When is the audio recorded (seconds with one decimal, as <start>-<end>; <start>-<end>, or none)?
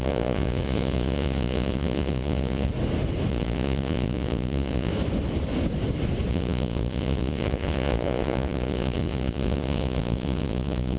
2.7-3.3; 4.9-6.3